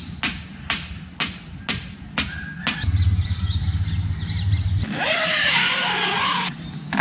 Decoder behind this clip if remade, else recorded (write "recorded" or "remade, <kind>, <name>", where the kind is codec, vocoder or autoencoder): recorded